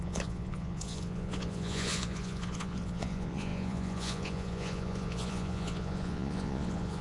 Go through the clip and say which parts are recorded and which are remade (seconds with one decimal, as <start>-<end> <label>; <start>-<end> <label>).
0.0-7.0 remade